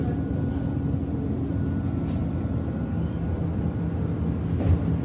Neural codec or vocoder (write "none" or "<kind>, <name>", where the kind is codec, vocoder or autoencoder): none